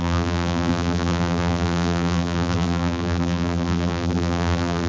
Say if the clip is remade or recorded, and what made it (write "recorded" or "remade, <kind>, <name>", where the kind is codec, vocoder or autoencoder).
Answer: remade, vocoder, BigVGAN v2